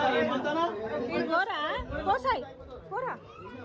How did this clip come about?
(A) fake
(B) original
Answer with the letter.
B